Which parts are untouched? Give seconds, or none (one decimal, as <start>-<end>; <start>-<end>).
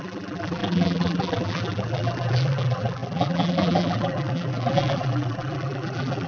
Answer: none